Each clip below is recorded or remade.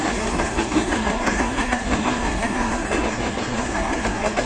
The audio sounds remade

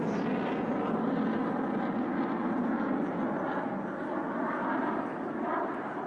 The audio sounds recorded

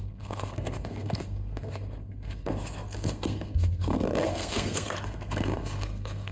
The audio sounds remade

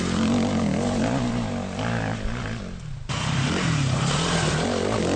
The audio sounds recorded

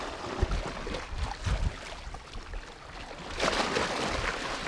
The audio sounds recorded